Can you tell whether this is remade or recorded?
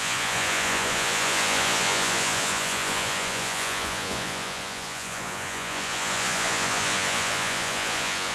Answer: remade